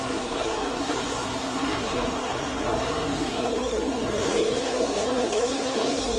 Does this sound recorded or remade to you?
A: remade